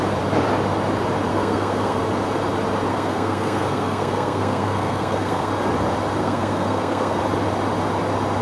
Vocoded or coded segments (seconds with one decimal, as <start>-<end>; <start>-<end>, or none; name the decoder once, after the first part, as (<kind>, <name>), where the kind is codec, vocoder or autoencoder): 1.3-2.0 (codec, SNAC); 2.9-5.5; 6.2-7.2